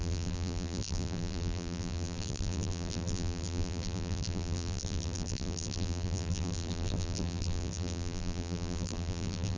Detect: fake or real fake